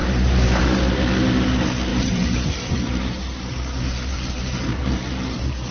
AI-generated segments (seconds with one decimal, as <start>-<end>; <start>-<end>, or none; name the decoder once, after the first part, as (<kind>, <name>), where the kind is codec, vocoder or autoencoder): 0.0-0.6 (vocoder, BigVGAN v2); 1.9-3.5; 4.1-4.8

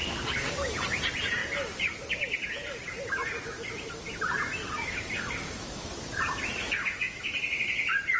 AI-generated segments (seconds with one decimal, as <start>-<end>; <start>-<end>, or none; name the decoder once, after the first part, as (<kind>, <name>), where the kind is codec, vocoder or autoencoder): 4.5-5.9 (autoencoder, DAC-VAE); 6.6-7.4